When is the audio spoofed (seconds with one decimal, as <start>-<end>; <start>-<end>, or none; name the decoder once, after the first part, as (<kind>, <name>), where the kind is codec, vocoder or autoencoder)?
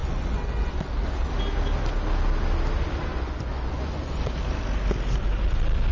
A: 0.0-1.3 (vocoder, Vocos); 3.1-4.4